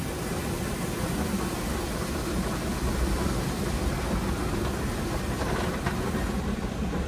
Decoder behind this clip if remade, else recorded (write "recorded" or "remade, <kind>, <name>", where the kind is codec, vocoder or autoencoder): recorded